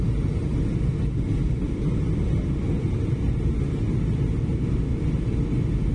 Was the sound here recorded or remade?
recorded